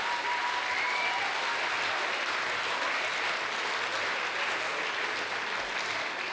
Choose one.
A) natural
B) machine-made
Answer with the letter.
A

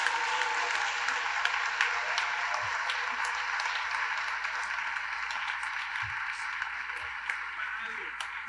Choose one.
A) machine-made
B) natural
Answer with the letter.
A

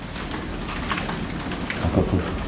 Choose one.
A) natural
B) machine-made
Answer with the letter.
A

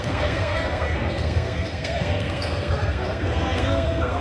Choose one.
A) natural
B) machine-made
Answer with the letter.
B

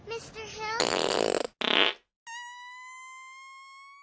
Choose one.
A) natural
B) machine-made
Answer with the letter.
A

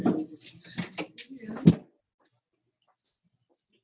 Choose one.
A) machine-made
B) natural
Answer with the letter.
B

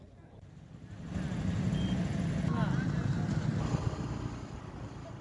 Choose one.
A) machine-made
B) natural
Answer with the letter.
B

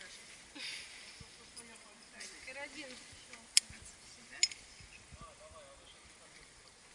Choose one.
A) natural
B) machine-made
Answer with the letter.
A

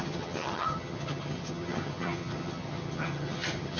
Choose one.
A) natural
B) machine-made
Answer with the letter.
B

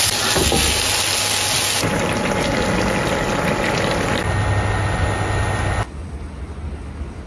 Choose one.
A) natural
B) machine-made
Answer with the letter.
A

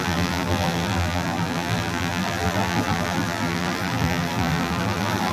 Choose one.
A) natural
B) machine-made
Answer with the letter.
B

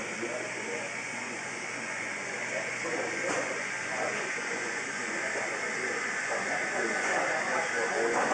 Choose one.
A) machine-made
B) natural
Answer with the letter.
A